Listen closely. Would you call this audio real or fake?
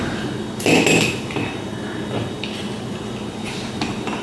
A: real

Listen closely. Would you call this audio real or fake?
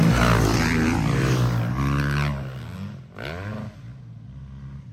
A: real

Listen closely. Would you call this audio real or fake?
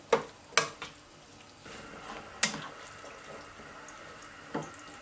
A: real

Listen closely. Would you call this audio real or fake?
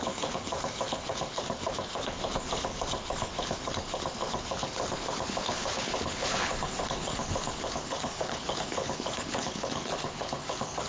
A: fake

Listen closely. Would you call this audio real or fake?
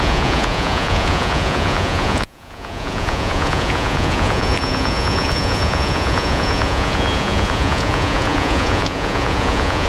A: fake